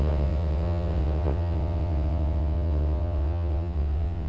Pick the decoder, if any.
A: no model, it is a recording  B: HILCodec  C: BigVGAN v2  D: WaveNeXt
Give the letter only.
D